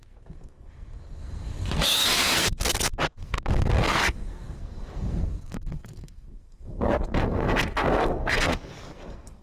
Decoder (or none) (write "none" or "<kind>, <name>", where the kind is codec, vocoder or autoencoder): codec, SNAC